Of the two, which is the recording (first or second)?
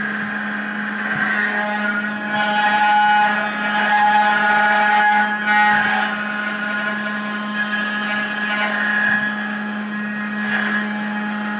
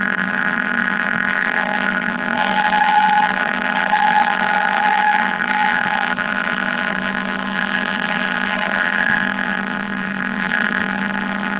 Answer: first